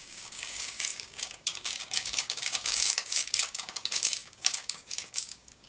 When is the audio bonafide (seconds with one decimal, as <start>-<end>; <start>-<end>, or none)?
none